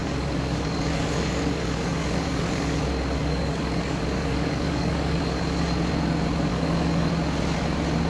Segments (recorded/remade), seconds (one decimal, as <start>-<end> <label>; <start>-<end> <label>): 0.0-2.8 remade; 2.8-3.2 recorded; 3.2-5.4 remade; 5.4-6.5 recorded; 6.5-7.1 remade; 7.1-8.1 recorded